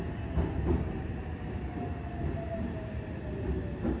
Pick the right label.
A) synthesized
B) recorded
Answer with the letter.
B